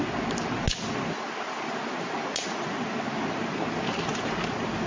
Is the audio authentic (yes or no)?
yes